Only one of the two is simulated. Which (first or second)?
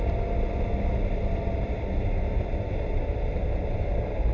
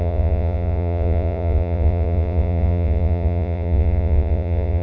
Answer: second